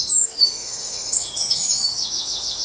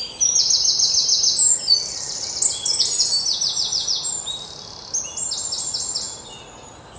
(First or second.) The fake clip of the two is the first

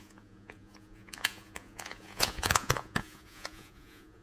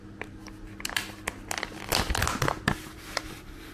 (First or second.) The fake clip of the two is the first